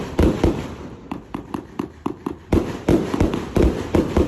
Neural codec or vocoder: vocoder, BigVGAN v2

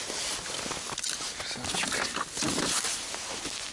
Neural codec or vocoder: none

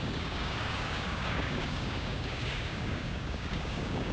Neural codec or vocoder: codec, DAC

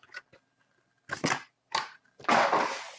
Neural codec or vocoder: none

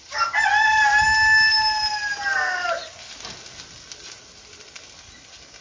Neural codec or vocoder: none